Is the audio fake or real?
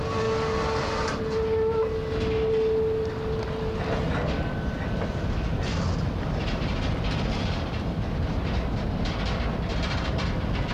real